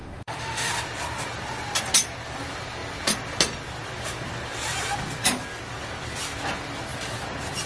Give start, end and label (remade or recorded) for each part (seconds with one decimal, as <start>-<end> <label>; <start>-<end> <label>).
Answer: 0.0-0.7 remade; 0.7-7.7 recorded

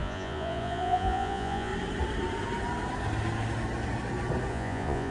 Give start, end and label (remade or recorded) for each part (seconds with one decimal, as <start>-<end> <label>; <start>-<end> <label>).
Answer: 0.0-1.7 remade; 1.7-4.5 recorded; 4.5-5.1 remade

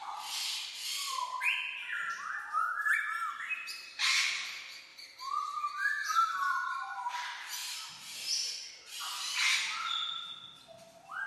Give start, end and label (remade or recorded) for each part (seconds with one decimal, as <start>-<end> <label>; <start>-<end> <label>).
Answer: 0.0-4.9 recorded; 4.9-7.1 remade; 7.1-11.3 recorded

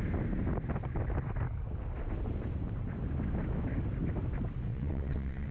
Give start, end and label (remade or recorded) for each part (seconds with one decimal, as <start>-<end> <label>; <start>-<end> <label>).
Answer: 0.0-4.7 recorded; 4.7-5.5 remade

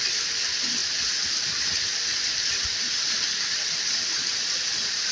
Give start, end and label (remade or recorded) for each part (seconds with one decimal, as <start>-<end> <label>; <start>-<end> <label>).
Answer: 0.0-5.1 recorded

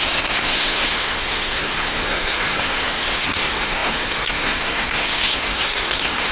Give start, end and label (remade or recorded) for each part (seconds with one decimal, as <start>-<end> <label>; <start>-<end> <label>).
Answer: 0.0-6.3 remade

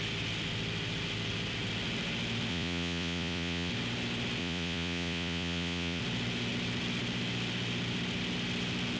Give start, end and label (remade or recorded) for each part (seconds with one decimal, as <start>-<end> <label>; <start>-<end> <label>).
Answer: 0.0-2.5 recorded; 2.5-3.7 remade; 3.7-4.4 recorded; 4.4-6.0 remade; 6.0-9.0 recorded

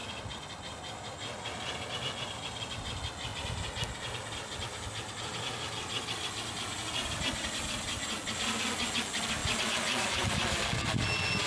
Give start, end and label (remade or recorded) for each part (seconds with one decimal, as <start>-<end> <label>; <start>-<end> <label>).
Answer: 0.0-11.5 recorded